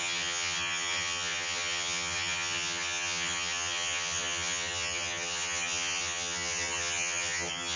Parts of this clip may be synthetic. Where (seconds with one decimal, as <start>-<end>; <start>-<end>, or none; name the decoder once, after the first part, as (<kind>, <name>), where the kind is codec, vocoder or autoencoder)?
0.0-7.8 (vocoder, HiFi-GAN)